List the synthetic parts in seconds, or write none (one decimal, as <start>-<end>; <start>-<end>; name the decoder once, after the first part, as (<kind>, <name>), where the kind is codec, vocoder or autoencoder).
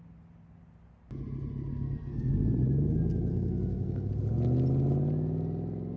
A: 1.7-2.3 (codec, SNAC); 3.3-4.1